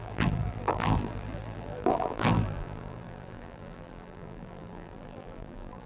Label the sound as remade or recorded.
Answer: remade